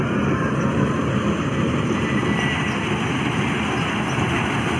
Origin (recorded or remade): recorded